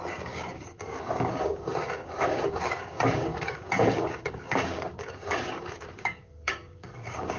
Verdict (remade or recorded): remade